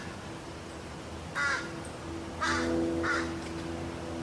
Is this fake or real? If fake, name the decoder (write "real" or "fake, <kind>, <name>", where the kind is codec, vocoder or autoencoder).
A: real